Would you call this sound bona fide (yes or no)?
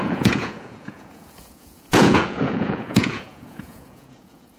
no